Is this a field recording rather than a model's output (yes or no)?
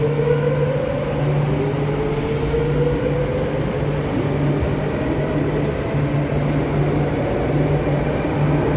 yes